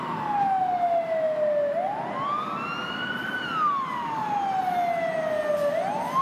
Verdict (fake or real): real